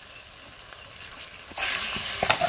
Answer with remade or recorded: recorded